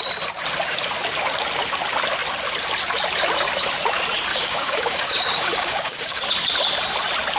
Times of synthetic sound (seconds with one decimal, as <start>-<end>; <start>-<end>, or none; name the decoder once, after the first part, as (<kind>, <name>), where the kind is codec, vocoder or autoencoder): 4.3-6.2 (codec, DAC)